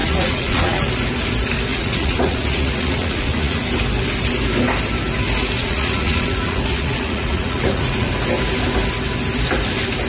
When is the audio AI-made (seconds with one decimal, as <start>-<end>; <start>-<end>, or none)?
0.0-0.9; 1.7-3.6; 5.6-8.1